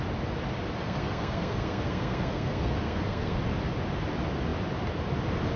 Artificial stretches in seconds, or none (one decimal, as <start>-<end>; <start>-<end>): 0.8-3.4